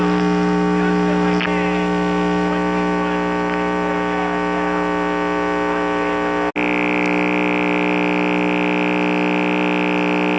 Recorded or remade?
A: recorded